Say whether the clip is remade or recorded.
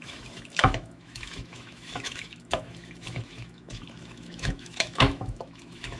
remade